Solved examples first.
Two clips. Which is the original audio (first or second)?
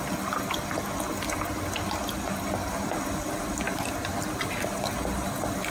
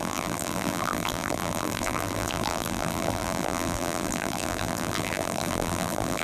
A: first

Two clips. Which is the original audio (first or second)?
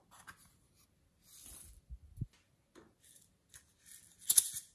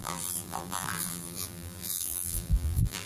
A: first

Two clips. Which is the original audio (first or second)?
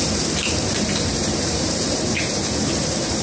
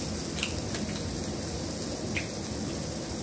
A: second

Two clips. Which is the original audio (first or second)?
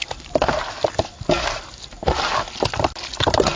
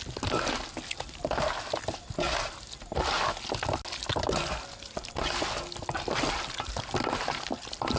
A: second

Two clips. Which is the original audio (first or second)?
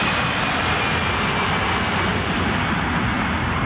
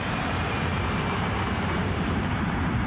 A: first